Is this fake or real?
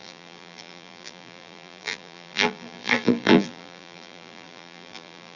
fake